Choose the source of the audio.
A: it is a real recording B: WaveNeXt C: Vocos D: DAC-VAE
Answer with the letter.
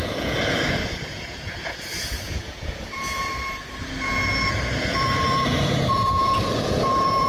C